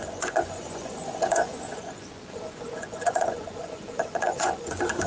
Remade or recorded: remade